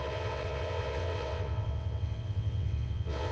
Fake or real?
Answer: fake